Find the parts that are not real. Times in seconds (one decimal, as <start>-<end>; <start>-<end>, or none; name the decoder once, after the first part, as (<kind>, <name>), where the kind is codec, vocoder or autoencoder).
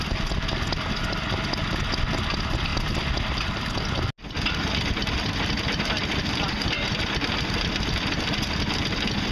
none